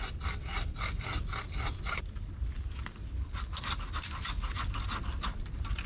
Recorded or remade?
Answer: recorded